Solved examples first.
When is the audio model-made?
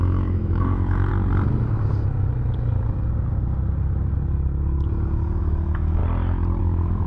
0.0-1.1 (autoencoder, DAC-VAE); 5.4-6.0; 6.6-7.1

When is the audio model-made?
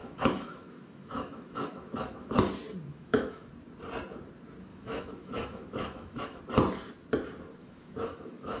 0.0-2.4 (autoencoder, DAC-VAE); 2.9-3.5; 4.7-6.4; 7.6-8.6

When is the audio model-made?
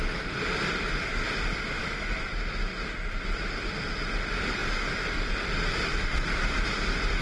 1.8-2.7 (autoencoder, DAC-VAE)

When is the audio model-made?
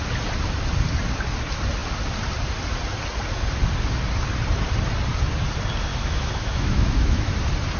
5.9-7.3 (autoencoder, DAC-VAE)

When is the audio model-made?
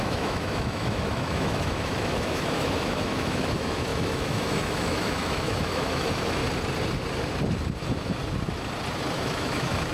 0.0-6.4 (autoencoder, DAC-VAE); 9.2-9.9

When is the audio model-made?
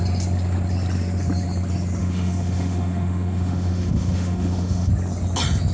2.0-4.9 (autoencoder, DAC-VAE)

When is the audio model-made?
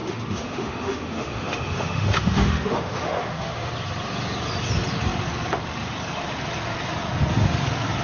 0.0-3.7 (autoencoder, DAC-VAE)